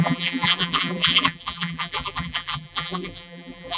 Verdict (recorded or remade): remade